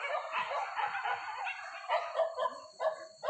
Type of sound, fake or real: real